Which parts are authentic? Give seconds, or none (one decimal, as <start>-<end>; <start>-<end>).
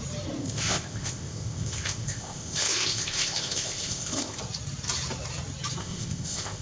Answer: 0.0-0.4; 4.4-5.8